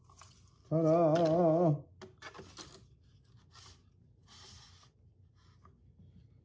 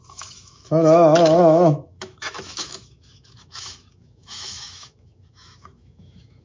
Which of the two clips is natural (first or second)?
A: first